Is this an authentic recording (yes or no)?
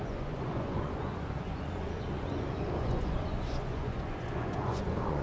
no